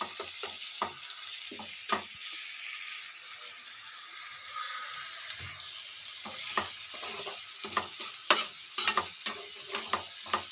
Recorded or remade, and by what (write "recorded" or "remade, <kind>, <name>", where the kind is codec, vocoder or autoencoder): recorded